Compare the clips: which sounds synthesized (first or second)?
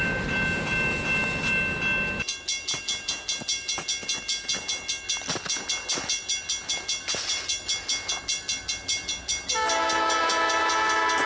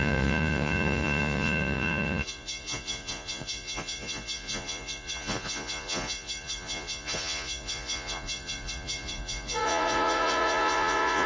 second